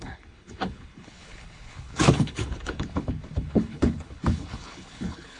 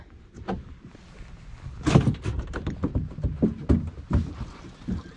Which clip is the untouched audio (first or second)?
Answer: second